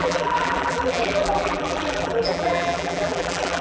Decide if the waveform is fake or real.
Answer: fake